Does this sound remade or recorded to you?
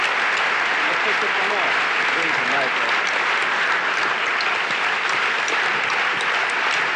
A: recorded